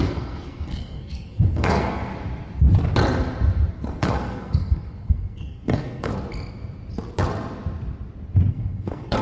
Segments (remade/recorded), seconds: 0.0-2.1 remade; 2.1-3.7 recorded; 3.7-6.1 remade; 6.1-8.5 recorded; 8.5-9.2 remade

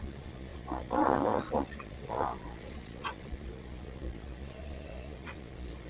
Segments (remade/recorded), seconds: 0.0-5.9 remade

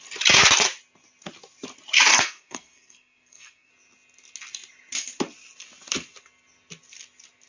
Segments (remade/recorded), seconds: 0.0-2.1 recorded; 2.1-3.7 remade; 3.7-7.5 recorded

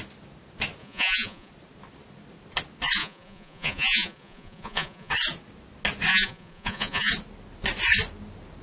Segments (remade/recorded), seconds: 0.0-0.8 recorded; 0.8-1.5 remade; 1.5-3.0 recorded; 3.0-5.1 remade; 5.1-6.1 recorded; 6.1-7.1 remade; 7.1-8.6 recorded

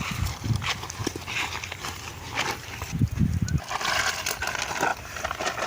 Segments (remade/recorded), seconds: 0.0-5.7 recorded

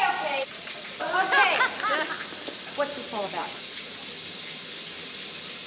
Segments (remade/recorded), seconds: 0.0-0.5 recorded; 0.5-1.0 remade; 1.0-3.4 recorded; 3.4-4.0 remade; 4.0-5.7 recorded